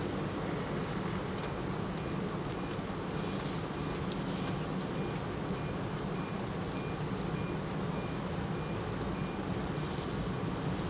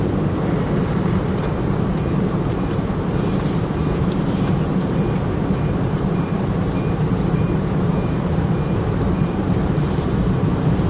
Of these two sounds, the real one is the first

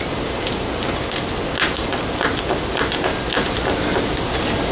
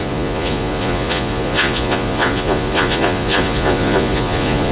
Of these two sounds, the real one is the first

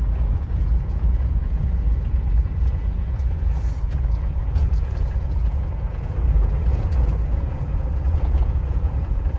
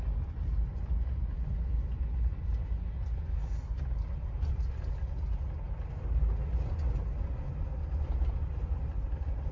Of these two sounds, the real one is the second